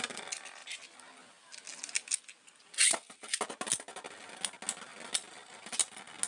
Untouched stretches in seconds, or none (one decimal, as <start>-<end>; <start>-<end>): 0.0-6.3